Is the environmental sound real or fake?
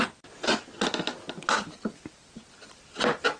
real